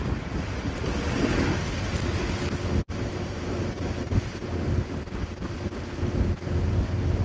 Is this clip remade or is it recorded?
recorded